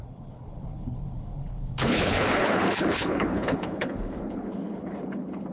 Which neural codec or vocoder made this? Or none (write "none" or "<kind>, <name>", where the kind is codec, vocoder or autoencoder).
codec, HILCodec